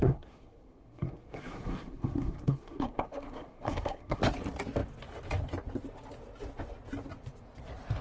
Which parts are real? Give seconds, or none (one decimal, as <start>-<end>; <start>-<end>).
4.2-8.0